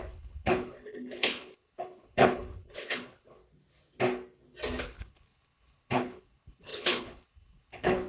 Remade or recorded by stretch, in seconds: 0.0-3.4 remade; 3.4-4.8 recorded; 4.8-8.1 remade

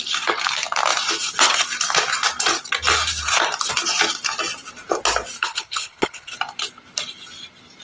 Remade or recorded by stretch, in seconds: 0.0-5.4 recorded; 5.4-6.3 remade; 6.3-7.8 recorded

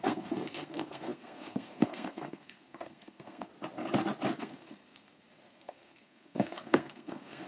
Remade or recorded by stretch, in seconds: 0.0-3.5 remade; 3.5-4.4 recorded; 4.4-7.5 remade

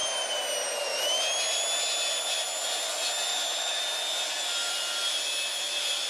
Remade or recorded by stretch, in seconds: 0.0-3.3 recorded; 3.3-3.8 remade; 3.8-6.1 recorded

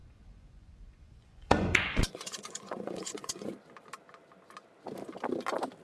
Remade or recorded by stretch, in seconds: 0.0-3.5 remade; 3.5-5.8 recorded

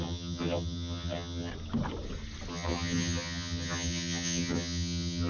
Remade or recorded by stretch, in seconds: 0.0-1.5 remade; 1.5-2.5 recorded; 2.5-5.3 remade

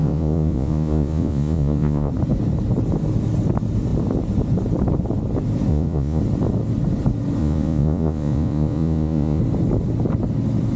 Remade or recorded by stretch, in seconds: 0.0-2.1 remade; 2.1-5.7 recorded; 5.7-6.2 remade; 6.2-7.4 recorded; 7.4-9.4 remade; 9.4-10.8 recorded